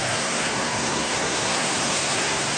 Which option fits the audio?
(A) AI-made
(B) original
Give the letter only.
A